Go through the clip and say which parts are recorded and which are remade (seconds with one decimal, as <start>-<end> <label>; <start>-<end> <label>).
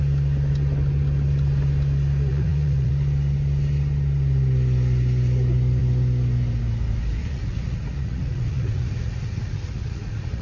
0.0-2.3 recorded; 2.3-2.9 remade; 2.9-7.2 recorded; 7.2-10.4 remade